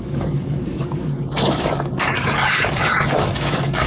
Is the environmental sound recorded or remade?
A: remade